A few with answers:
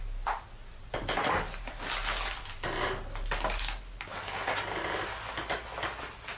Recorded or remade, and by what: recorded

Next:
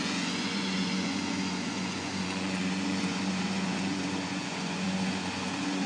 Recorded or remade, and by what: remade, vocoder, Vocos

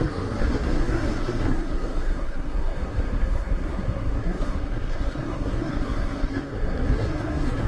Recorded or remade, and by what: remade, codec, SNAC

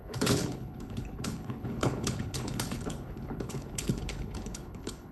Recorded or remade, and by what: remade, codec, HILCodec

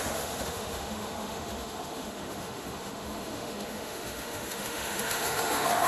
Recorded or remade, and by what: remade, autoencoder, DAC-VAE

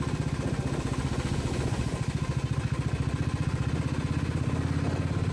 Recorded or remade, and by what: recorded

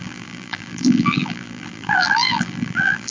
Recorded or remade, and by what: remade, vocoder, BigVGAN v2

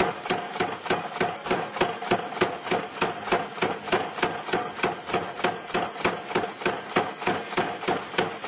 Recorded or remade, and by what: recorded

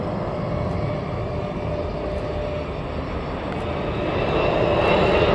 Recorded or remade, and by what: recorded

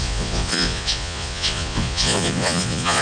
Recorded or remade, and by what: remade, vocoder, Vocos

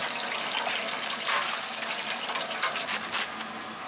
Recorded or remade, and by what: recorded